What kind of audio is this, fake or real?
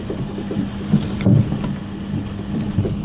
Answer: real